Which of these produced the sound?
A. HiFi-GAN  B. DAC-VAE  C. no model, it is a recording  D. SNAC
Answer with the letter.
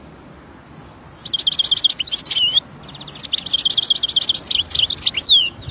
C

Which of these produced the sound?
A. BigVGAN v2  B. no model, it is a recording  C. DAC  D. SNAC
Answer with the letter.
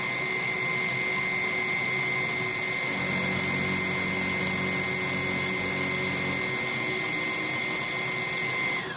B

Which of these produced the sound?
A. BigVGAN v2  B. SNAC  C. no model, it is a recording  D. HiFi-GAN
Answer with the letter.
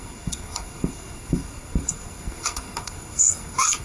B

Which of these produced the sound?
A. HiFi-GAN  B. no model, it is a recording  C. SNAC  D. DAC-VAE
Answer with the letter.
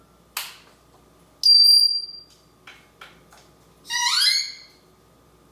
B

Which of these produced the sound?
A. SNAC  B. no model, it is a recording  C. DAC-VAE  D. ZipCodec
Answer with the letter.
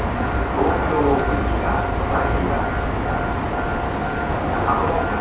B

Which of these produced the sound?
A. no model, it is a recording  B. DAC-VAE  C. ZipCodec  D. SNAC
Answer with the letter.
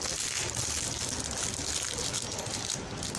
A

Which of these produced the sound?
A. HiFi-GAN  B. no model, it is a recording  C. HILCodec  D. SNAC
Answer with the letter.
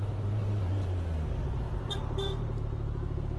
B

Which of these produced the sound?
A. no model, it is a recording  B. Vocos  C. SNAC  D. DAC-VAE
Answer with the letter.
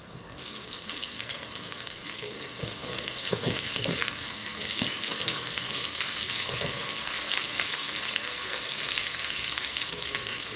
C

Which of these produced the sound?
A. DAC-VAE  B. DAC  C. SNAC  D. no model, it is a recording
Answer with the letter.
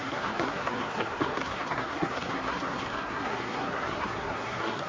C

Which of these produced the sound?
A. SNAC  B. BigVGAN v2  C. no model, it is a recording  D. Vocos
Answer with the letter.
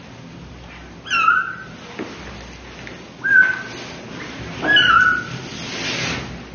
C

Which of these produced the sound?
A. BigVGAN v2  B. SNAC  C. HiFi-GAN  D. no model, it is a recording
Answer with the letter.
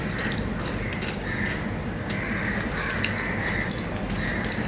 D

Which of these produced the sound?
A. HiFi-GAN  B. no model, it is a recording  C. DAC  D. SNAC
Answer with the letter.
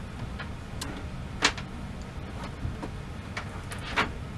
B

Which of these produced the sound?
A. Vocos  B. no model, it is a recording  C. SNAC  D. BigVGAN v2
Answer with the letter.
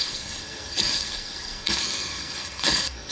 C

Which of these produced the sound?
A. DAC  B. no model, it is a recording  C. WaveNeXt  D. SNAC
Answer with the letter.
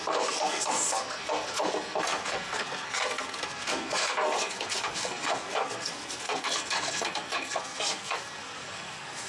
D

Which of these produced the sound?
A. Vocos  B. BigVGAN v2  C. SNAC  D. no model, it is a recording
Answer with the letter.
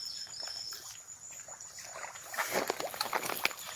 D